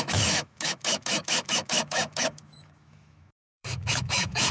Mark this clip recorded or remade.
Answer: remade